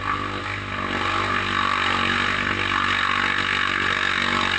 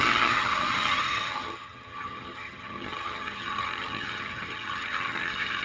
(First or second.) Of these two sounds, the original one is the first